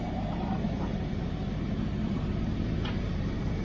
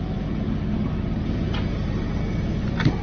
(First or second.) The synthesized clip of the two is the first